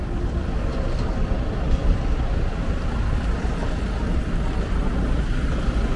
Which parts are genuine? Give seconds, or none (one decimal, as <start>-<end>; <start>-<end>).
0.0-6.0